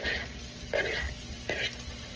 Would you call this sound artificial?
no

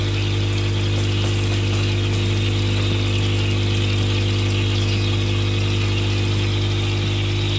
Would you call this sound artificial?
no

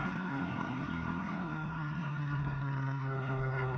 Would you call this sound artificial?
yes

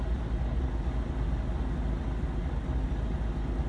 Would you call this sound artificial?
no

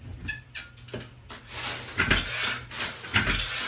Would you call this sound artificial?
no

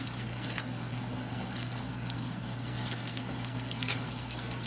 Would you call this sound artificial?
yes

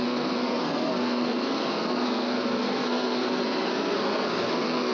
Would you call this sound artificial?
yes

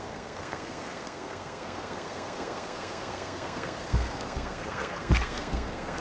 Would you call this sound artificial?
yes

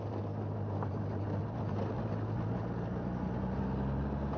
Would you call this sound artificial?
no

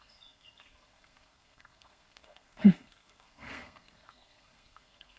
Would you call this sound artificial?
yes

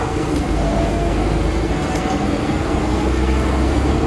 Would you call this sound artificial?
yes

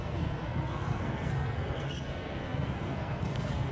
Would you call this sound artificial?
yes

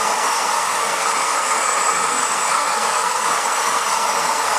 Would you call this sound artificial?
yes